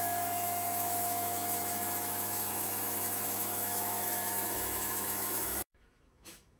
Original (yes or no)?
no